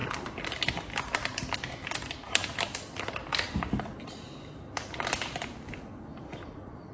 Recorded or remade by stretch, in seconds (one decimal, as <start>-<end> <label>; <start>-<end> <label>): 0.0-6.9 recorded